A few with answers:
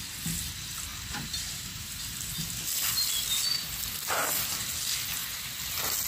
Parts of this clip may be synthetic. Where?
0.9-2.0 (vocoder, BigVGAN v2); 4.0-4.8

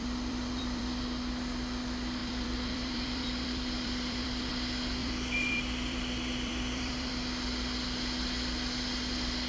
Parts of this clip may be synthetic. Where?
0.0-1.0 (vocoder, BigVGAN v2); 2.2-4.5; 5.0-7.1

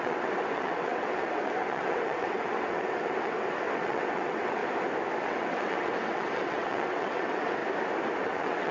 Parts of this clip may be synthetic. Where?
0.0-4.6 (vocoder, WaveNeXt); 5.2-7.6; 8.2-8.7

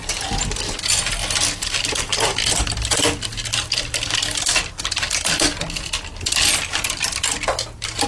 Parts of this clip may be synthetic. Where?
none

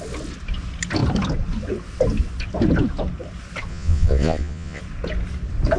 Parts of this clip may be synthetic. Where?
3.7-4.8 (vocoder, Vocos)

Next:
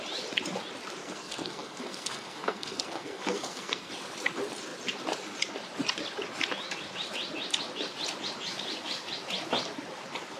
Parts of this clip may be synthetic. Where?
1.0-3.9 (codec, SNAC)

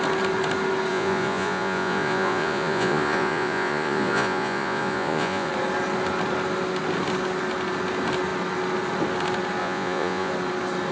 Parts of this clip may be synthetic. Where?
0.9-5.5 (vocoder, Vocos); 9.6-10.3

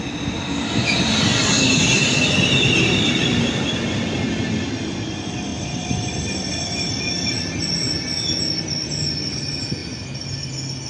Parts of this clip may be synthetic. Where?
1.3-5.0 (vocoder, BigVGAN v2); 5.5-6.1; 9.8-10.5